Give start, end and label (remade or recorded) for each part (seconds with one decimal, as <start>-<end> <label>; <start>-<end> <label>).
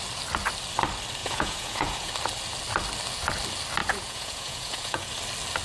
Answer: 0.0-1.2 recorded; 1.2-2.1 remade; 2.1-3.8 recorded; 3.8-5.1 remade; 5.1-5.6 recorded